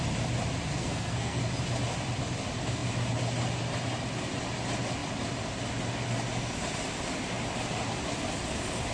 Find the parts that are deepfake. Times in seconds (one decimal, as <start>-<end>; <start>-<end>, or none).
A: 0.7-1.4